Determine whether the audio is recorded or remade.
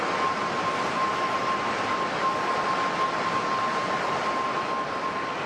recorded